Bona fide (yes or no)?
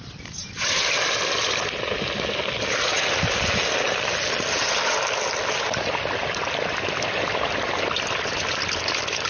yes